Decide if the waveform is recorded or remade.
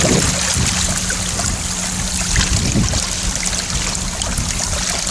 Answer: recorded